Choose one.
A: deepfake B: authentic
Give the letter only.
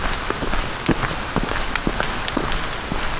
B